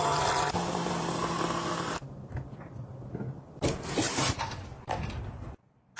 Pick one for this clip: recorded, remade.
recorded